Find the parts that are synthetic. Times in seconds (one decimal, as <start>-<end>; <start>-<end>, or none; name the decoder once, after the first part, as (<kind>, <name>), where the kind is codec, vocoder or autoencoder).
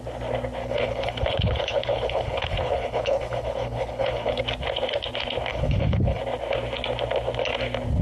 0.6-4.4 (codec, HILCodec); 5.5-6.2